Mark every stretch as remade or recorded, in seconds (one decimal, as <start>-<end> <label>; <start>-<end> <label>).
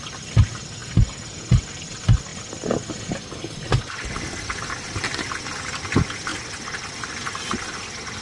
0.0-8.2 recorded